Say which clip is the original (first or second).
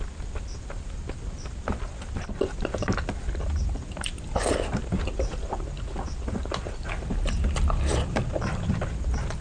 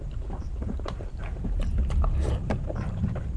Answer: first